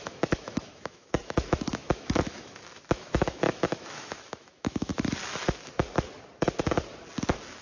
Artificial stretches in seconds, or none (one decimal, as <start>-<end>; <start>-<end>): 0.0-4.9